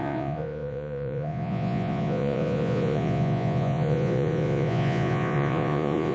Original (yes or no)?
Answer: no